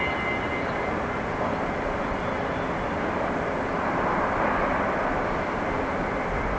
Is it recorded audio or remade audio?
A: recorded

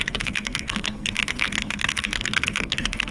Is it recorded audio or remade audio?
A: remade